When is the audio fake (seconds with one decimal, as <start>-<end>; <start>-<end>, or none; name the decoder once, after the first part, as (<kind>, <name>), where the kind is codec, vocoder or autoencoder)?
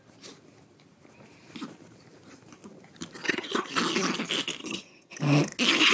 3.2-3.7 (vocoder, HiFi-GAN); 4.6-5.2